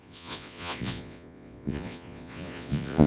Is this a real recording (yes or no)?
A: no